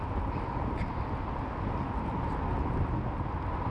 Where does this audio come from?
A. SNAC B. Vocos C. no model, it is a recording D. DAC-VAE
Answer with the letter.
C